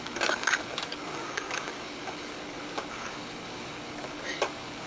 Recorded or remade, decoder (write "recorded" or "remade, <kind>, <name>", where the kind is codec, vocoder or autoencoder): remade, codec, DAC